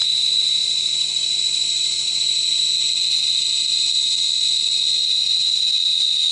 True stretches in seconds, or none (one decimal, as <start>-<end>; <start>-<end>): 2.2-5.0; 5.6-6.3